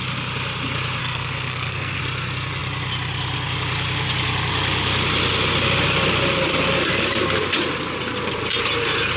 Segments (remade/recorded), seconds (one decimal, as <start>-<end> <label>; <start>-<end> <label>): 0.0-1.0 recorded; 1.0-2.0 remade; 2.0-9.2 recorded